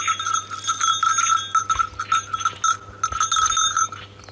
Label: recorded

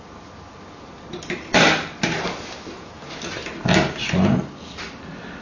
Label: recorded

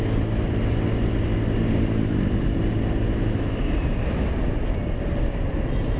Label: recorded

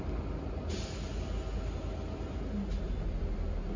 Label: recorded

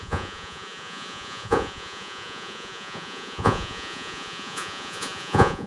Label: remade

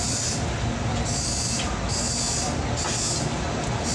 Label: recorded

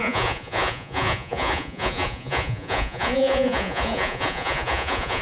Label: remade